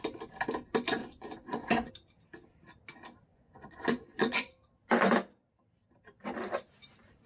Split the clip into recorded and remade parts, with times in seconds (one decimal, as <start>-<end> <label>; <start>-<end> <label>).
0.0-1.0 recorded; 1.0-1.9 remade; 1.9-3.3 recorded; 3.3-4.5 remade; 4.5-7.3 recorded